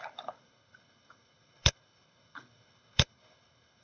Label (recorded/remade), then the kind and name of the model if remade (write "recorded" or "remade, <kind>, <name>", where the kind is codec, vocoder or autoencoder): remade, codec, HILCodec